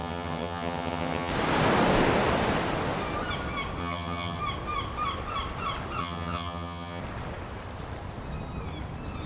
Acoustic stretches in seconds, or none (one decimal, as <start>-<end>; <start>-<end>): 1.3-3.8; 4.4-6.0; 7.0-9.3